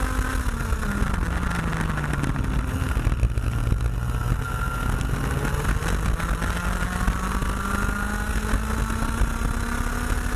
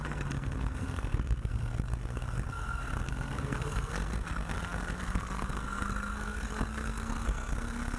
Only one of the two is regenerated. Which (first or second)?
second